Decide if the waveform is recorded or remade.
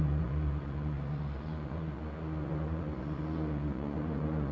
remade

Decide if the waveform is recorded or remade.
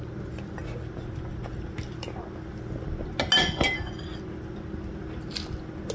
recorded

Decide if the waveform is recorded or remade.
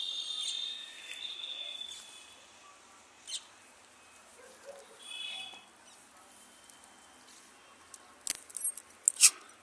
recorded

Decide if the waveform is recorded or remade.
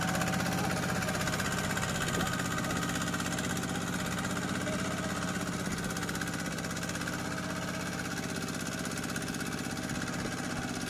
recorded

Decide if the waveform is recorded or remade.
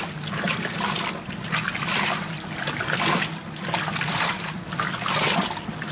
recorded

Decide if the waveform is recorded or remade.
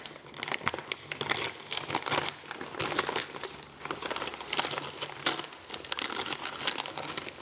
recorded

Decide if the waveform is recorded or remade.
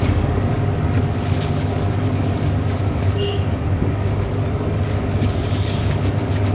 remade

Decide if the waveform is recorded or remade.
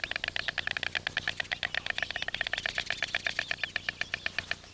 recorded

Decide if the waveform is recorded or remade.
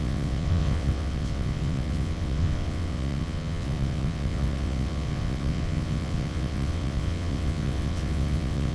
remade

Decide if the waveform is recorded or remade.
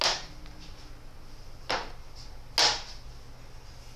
recorded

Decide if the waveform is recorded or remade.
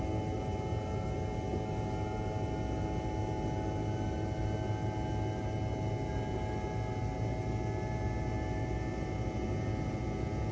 recorded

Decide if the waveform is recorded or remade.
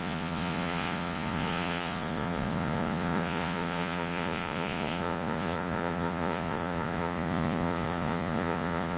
remade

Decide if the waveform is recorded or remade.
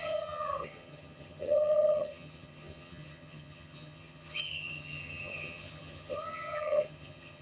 remade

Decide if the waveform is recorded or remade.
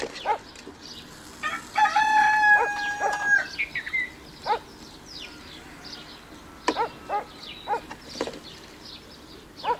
recorded